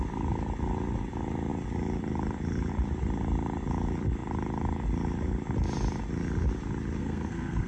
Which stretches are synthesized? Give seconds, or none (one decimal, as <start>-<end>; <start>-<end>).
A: 7.0-7.7